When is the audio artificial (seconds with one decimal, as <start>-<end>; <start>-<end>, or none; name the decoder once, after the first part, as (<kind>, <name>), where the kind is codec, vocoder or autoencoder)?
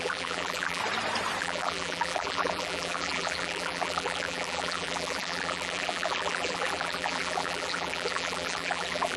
0.0-0.8 (vocoder, BigVGAN v2); 1.4-9.2